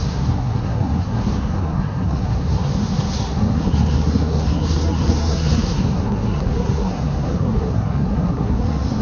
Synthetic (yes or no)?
yes